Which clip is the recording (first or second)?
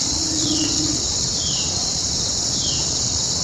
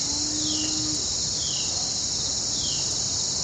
second